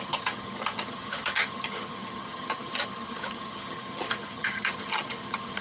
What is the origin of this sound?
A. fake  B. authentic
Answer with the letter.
A